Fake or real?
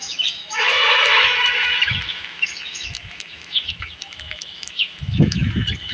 fake